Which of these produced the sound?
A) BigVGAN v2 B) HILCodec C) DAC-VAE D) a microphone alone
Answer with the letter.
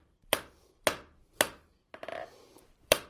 A